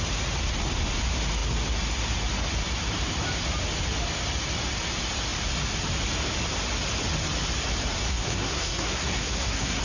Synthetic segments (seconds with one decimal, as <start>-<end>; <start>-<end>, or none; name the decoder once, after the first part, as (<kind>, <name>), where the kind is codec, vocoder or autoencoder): 8.1-9.8 (codec, SNAC)